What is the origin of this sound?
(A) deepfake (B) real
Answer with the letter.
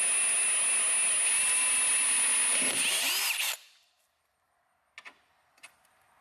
B